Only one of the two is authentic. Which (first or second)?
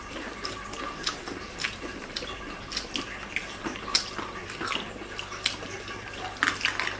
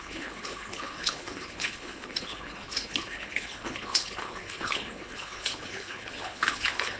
first